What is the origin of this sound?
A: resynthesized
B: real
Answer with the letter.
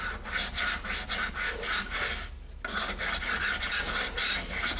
B